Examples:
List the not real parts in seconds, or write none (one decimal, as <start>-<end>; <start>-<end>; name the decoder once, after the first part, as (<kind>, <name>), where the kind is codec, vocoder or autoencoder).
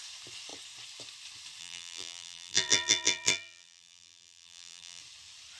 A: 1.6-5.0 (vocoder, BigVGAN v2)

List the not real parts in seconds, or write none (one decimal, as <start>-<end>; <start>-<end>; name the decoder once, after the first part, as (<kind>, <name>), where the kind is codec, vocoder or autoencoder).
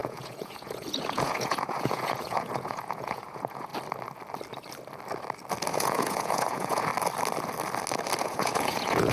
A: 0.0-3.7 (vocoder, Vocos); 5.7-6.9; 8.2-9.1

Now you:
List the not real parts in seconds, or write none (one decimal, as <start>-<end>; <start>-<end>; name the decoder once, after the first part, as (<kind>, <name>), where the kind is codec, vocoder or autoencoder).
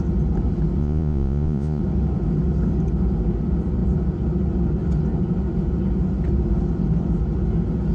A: 0.8-1.8 (vocoder, Vocos)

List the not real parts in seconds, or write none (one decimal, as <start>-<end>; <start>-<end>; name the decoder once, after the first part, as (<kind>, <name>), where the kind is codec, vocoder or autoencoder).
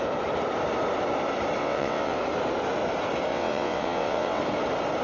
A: 1.6-2.2 (vocoder, WaveNeXt); 3.3-4.4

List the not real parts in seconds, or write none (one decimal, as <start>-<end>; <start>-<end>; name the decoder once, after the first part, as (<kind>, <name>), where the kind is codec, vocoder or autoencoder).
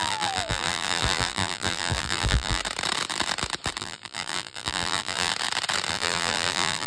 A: 0.0-2.6 (vocoder, BigVGAN v2); 3.8-5.3; 5.9-6.9